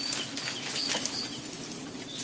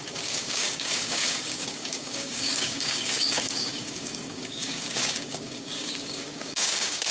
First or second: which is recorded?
first